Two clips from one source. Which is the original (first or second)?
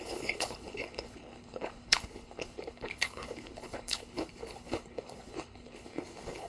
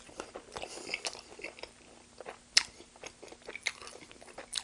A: second